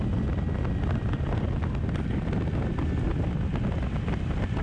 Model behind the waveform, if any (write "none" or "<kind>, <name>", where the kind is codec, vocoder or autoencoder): none